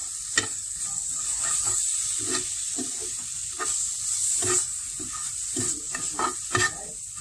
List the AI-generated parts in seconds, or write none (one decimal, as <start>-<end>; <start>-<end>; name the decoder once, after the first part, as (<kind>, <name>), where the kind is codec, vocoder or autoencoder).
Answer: none